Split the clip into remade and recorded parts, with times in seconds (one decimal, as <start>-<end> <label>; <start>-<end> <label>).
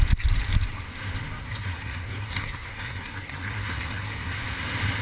0.0-1.4 recorded; 1.4-4.4 remade; 4.4-5.0 recorded